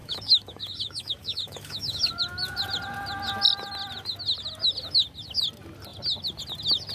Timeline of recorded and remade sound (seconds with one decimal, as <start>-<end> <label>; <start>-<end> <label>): 0.0-2.1 remade; 2.1-6.9 recorded